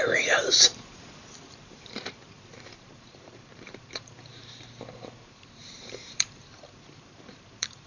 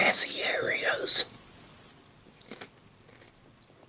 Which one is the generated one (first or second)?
first